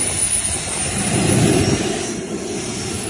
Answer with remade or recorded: recorded